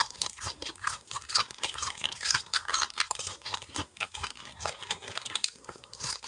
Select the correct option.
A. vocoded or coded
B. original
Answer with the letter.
A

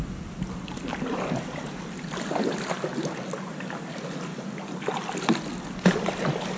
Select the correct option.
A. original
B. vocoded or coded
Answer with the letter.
A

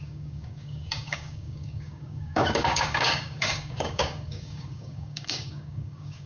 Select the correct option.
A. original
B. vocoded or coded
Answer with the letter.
B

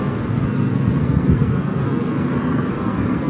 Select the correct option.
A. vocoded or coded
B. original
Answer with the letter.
A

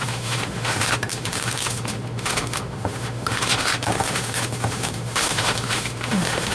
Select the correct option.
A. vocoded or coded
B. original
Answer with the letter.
A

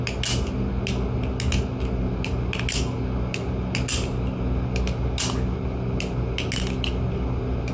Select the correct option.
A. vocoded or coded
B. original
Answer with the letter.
B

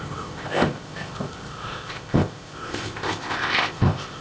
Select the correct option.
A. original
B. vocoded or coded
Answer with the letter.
B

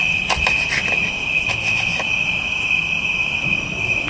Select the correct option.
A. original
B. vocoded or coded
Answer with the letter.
A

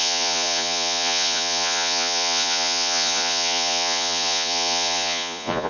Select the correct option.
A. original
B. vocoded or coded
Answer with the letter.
B